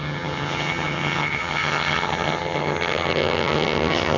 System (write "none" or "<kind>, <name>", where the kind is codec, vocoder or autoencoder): vocoder, HiFi-GAN